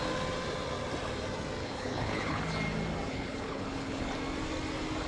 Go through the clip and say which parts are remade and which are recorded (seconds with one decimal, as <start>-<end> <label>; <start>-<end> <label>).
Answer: 0.0-1.6 recorded; 1.6-2.4 remade; 2.4-3.1 recorded; 3.1-4.1 remade; 4.1-5.1 recorded